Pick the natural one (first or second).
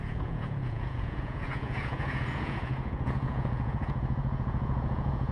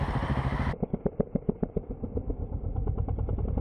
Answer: second